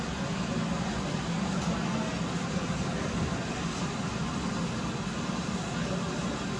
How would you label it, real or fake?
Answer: real